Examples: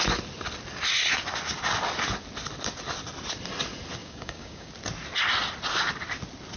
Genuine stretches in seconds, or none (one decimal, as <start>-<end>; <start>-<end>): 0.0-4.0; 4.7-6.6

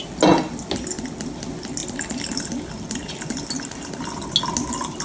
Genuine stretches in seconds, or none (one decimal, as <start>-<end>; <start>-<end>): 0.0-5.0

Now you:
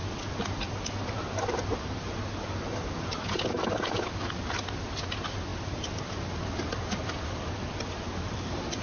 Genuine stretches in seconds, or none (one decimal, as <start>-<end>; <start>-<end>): 0.0-8.8

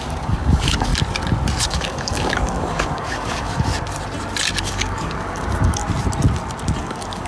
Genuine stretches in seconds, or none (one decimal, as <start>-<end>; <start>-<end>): 0.9-1.6; 3.7-4.6; 5.8-6.8

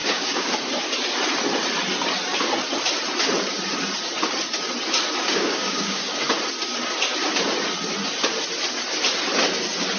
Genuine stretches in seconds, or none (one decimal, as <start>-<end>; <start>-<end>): 0.5-5.2; 6.1-10.0